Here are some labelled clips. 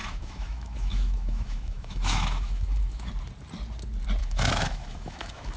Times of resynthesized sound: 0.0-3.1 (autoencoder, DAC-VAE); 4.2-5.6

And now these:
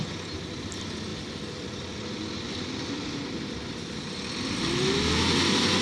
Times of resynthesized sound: 1.1-4.6 (vocoder, BigVGAN v2)

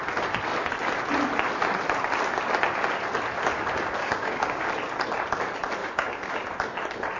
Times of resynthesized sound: 4.0-4.7 (codec, DAC); 5.8-6.3

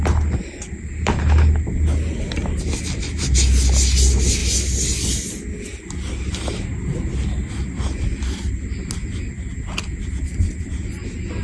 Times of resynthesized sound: none